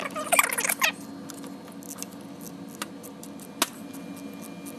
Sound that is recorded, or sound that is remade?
recorded